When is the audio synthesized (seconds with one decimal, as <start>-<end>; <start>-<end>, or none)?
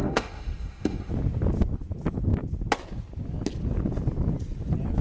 0.0-1.1